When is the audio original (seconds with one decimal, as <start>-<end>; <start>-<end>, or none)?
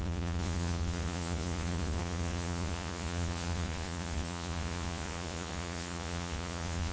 none